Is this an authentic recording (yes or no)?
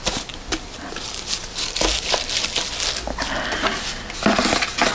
yes